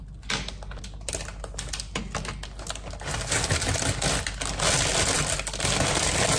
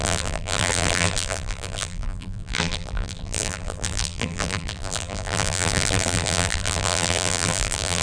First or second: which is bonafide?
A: first